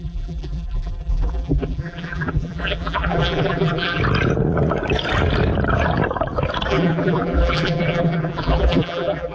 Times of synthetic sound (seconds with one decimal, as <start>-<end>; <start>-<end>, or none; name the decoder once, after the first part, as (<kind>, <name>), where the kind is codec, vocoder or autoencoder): 0.0-4.0 (vocoder, BigVGAN v2); 6.7-9.3

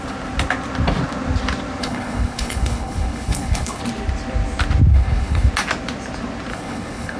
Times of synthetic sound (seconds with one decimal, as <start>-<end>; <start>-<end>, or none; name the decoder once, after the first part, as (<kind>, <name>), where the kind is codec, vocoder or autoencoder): 1.8-3.8 (codec, HILCodec); 4.9-5.5; 6.5-7.2

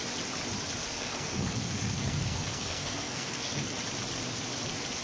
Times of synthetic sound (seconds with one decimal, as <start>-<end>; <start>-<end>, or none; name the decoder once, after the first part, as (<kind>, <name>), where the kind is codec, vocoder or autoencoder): 0.8-3.8 (codec, SNAC)